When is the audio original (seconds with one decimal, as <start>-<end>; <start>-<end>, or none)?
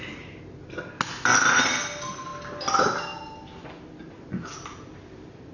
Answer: 0.0-5.5